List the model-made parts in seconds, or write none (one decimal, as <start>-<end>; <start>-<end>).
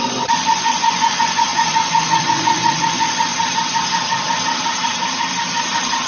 0.0-3.3